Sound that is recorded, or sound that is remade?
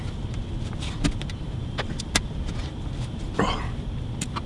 recorded